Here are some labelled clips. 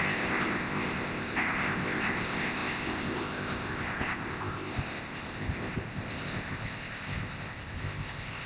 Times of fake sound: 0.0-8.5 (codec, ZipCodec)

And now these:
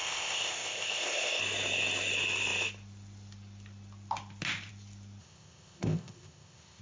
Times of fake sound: 0.0-1.4 (codec, ZipCodec); 5.2-6.8

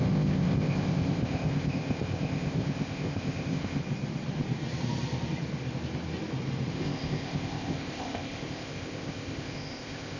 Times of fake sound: 0.0-3.8 (codec, ZipCodec); 6.7-10.2

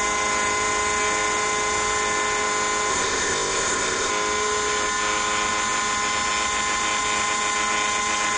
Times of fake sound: 2.9-4.1 (codec, ZipCodec)

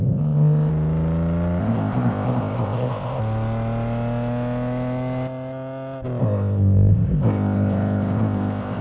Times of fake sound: 0.0-0.7 (codec, ZipCodec); 1.6-3.2; 6.2-8.8

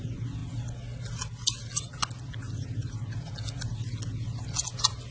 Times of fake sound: none

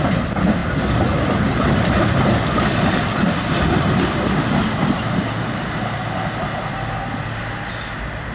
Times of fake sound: none

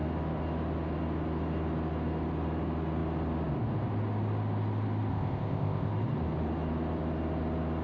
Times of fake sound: 5.1-5.9 (codec, ZipCodec)